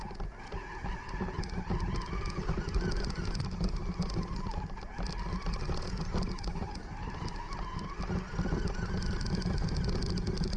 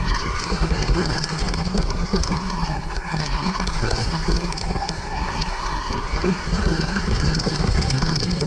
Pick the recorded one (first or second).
first